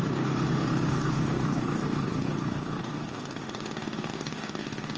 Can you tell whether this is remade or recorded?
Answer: remade